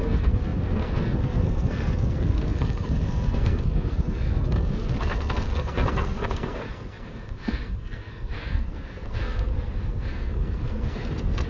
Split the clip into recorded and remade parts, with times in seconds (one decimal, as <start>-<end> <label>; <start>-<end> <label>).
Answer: 0.0-11.5 remade

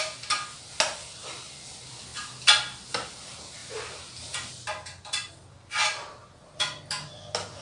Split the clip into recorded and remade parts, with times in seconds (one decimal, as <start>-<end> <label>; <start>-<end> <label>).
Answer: 0.0-7.6 recorded

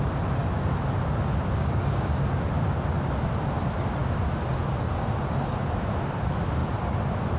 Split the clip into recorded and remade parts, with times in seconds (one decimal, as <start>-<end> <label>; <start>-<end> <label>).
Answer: 0.0-1.6 recorded; 1.6-2.1 remade; 2.1-7.4 recorded

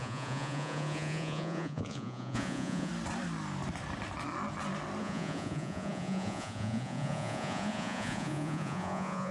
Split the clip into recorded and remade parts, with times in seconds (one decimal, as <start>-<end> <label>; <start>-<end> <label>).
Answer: 0.0-2.9 remade; 2.9-5.0 recorded; 5.0-9.3 remade

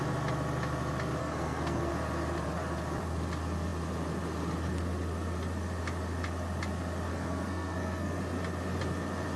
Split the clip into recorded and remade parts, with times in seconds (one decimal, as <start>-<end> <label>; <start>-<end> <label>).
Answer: 0.0-1.2 recorded; 1.2-1.9 remade; 1.9-7.1 recorded; 7.1-8.2 remade; 8.2-9.4 recorded

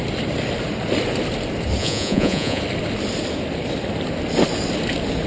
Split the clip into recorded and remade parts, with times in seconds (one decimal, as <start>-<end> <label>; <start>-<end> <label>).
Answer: 0.0-1.8 recorded; 1.8-2.6 remade; 2.6-5.3 recorded

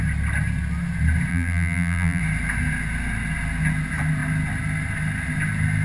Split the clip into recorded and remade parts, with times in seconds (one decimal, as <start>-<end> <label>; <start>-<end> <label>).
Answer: 0.0-1.3 recorded; 1.3-2.2 remade; 2.2-5.8 recorded

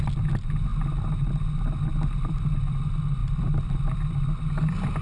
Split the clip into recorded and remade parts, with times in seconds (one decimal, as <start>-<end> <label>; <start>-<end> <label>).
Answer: 0.0-3.2 recorded; 3.2-5.0 remade